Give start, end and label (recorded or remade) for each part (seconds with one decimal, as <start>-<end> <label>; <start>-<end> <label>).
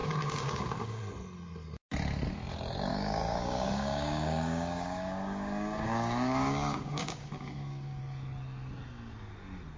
0.0-1.0 remade; 1.0-2.9 recorded; 2.9-8.0 remade; 8.0-9.8 recorded